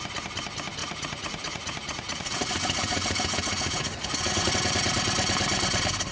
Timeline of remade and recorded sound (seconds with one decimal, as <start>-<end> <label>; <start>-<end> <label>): 0.0-0.8 recorded; 0.8-4.5 remade; 4.5-6.1 recorded